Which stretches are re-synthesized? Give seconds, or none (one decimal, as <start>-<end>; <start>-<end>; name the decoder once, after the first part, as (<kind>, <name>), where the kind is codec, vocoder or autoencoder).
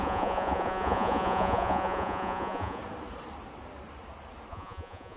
0.0-2.8 (vocoder, Vocos); 4.5-5.2